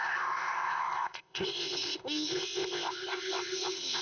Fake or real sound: fake